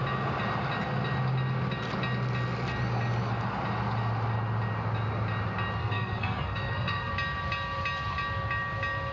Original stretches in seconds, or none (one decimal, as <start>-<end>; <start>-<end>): 0.0-5.8; 7.1-9.1